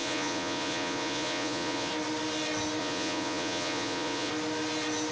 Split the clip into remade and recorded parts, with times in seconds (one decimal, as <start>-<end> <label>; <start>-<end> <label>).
0.0-1.9 remade; 1.9-2.8 recorded; 2.8-4.3 remade; 4.3-5.1 recorded